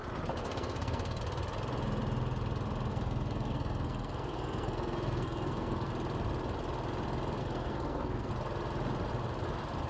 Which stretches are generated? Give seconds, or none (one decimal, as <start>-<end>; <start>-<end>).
0.4-1.2; 2.9-5.9; 7.4-8.3